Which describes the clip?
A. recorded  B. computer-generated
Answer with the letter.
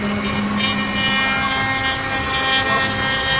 A